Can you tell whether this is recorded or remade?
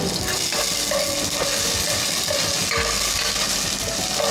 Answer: recorded